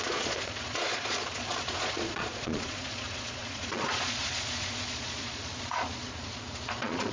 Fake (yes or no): yes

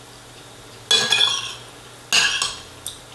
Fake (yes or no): no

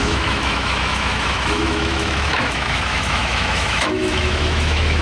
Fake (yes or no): yes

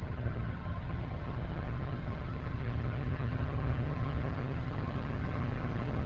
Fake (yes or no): yes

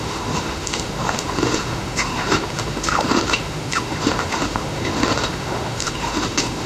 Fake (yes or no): yes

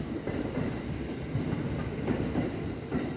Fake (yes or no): no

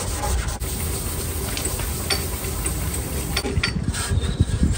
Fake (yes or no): no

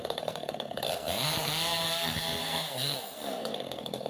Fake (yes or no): yes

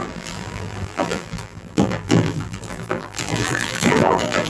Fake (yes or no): yes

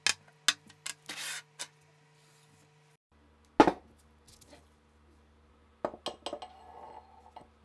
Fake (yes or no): no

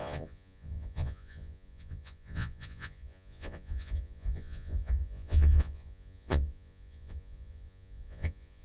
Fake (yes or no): yes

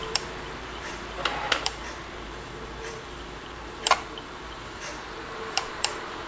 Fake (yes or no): yes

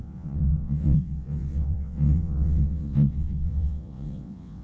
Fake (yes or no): yes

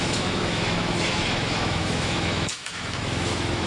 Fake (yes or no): yes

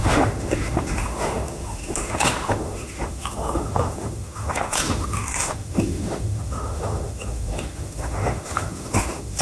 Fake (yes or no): yes